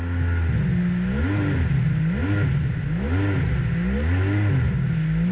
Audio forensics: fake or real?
real